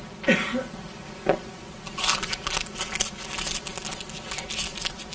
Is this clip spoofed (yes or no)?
no